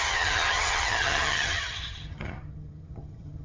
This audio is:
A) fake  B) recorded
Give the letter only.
A